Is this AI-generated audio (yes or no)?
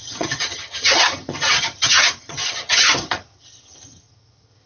yes